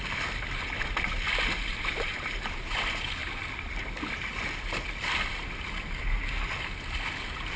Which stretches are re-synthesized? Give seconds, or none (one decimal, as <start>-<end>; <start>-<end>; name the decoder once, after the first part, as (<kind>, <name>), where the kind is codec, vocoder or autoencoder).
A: 1.7-2.8 (vocoder, BigVGAN v2)